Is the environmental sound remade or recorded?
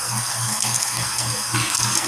remade